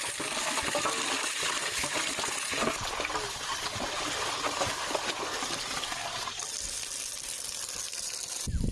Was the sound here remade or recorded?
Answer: recorded